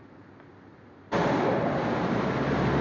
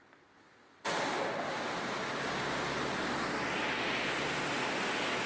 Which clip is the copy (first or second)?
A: first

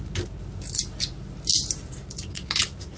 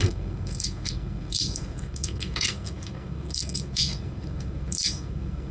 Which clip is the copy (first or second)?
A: second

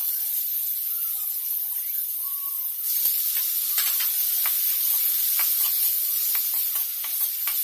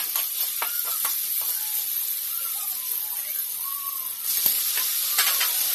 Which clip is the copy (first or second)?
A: first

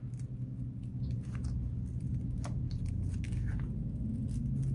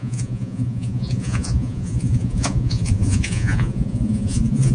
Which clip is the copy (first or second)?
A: second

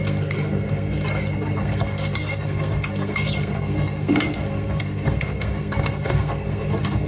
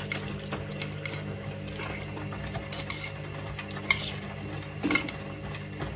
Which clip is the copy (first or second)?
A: first